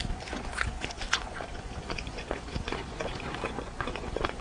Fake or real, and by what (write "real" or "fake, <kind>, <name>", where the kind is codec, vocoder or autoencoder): fake, vocoder, Vocos